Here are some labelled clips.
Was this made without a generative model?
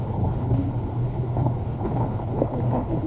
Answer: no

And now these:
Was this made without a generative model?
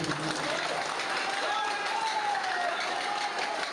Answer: yes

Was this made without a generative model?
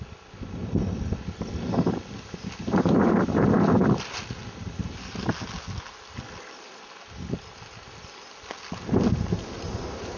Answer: yes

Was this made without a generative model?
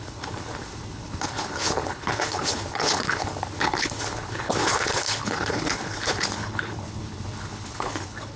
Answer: no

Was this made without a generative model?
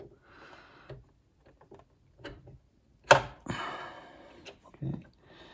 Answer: yes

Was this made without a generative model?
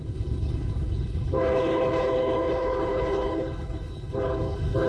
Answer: no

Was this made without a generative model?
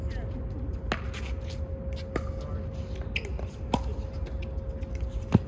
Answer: yes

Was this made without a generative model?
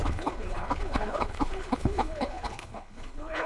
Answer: no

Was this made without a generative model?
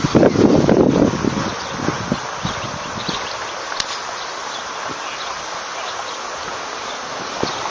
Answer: yes